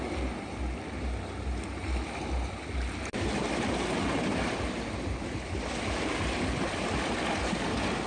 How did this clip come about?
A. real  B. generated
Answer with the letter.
A